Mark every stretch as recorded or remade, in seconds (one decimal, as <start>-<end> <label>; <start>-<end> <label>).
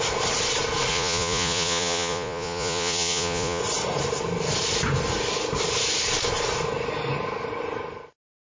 0.0-0.9 recorded; 0.9-3.6 remade; 3.6-8.5 recorded